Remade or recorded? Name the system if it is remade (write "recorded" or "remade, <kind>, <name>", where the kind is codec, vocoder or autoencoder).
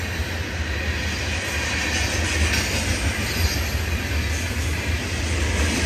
recorded